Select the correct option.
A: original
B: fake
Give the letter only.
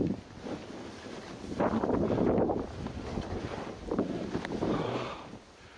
A